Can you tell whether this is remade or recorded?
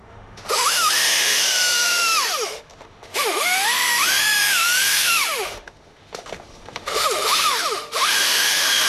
remade